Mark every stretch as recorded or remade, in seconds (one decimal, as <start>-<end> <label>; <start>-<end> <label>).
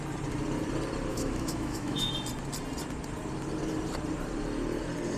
0.0-1.1 recorded; 1.1-2.1 remade; 2.1-5.2 recorded